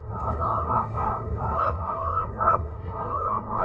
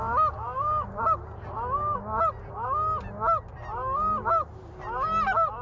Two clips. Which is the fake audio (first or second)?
first